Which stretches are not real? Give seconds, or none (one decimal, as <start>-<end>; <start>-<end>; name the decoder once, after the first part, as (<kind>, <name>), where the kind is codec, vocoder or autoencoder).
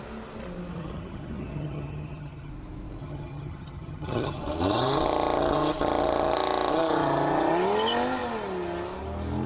0.7-2.5 (vocoder, HiFi-GAN); 3.0-4.4